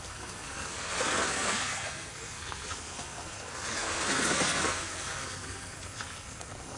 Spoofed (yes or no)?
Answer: yes